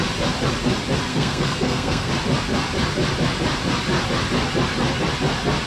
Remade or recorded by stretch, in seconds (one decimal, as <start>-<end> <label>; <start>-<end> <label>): 0.0-1.1 recorded; 1.1-2.1 remade; 2.1-5.7 recorded